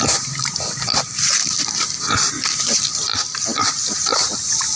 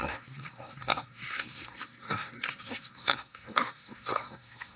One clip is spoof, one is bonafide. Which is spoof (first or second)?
second